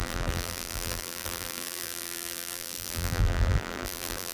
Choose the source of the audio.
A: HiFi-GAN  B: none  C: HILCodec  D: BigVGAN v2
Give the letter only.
D